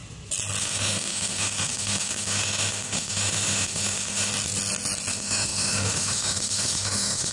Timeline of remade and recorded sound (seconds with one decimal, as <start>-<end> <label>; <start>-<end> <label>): 0.0-0.6 recorded; 0.6-4.3 remade; 4.3-5.1 recorded; 5.1-7.3 remade